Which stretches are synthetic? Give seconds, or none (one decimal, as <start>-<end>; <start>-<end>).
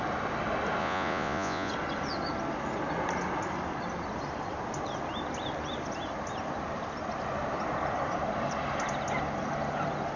0.8-1.7